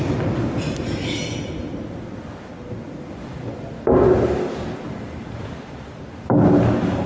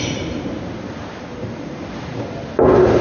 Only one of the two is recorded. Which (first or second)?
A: first